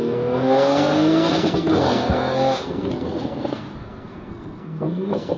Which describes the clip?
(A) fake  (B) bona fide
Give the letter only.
A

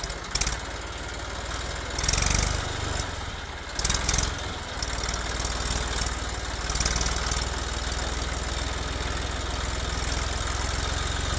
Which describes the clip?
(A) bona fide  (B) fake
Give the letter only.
A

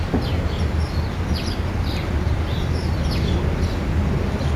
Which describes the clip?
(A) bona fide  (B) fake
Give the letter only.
A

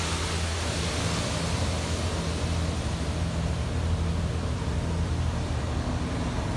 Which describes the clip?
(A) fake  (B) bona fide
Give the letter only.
B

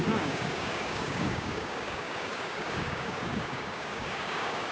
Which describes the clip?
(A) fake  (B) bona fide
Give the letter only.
A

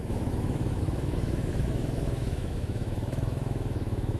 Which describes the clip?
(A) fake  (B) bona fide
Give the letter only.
A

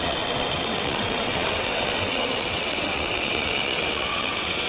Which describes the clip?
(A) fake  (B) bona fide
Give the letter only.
A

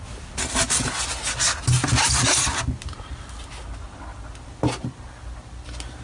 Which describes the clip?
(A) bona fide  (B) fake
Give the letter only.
A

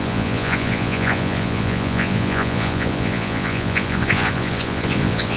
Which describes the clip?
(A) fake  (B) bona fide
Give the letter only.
A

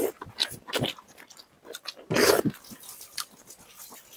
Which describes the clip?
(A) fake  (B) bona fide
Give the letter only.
A